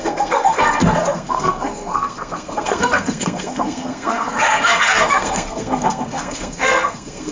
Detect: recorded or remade remade